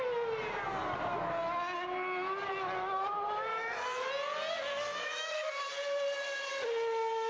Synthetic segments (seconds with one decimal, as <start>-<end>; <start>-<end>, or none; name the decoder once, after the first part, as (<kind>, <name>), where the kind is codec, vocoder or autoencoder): 3.5-4.1 (autoencoder, DAC-VAE); 4.9-5.7